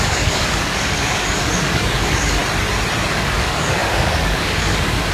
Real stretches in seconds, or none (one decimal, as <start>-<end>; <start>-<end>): 2.4-3.1